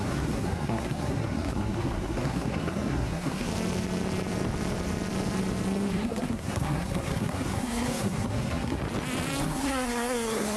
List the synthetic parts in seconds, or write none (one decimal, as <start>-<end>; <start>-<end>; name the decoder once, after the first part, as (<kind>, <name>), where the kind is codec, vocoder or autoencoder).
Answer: 0.0-3.5 (codec, SNAC); 5.9-8.8; 9.4-10.6